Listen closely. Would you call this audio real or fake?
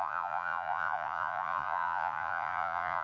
fake